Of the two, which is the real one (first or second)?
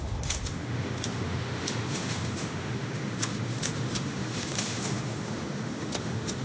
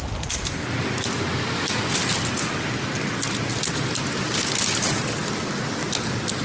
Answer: second